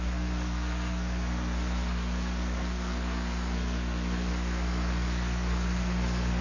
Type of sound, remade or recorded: remade